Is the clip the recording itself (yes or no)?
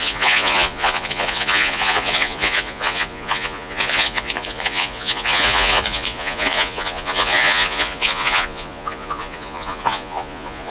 no